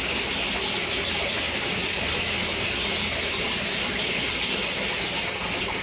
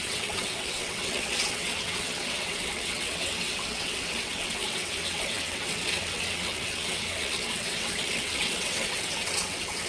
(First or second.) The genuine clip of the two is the first